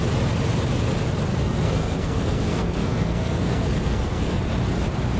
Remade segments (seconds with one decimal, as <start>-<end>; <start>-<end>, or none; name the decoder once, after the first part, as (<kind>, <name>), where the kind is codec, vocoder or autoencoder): 1.3-4.4 (codec, SNAC)